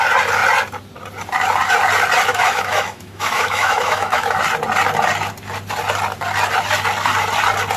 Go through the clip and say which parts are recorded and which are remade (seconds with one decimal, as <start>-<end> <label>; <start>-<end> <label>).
0.0-2.3 recorded; 2.3-4.4 remade; 4.4-7.8 recorded